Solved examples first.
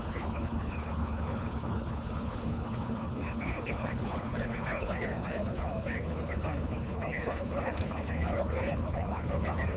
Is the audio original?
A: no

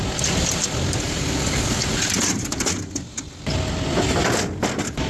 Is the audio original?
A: yes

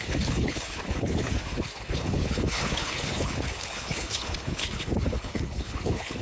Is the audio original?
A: no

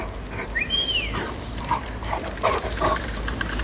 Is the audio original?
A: yes